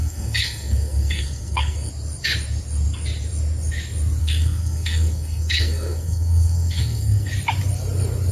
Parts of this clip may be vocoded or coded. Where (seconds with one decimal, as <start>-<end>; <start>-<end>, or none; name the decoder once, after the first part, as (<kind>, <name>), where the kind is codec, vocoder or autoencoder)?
0.0-1.9 (codec, SNAC); 4.2-7.3